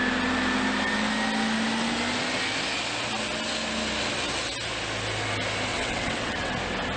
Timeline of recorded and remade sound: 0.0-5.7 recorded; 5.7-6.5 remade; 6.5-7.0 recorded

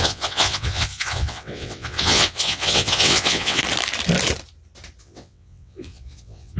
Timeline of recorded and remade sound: 0.0-3.6 remade; 3.6-5.0 recorded; 5.0-6.6 remade

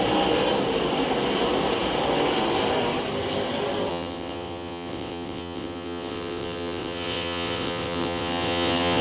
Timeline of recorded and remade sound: 0.0-3.9 recorded; 3.9-9.0 remade